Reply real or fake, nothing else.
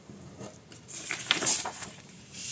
fake